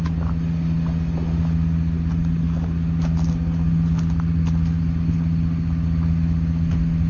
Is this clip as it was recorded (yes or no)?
yes